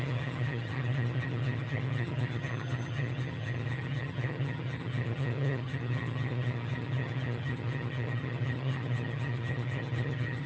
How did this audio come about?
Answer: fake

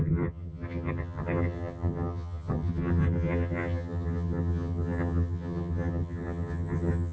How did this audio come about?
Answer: fake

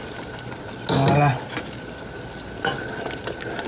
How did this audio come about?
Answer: real